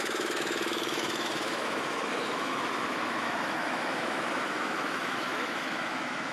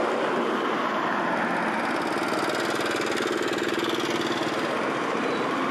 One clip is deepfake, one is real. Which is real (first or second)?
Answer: second